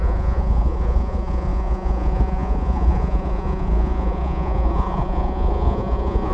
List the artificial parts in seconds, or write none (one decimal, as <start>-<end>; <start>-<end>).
0.0-6.3